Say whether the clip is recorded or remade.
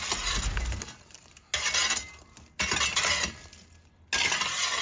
recorded